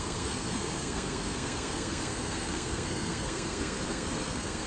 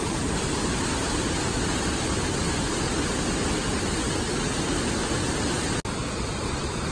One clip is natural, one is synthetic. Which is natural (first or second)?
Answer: second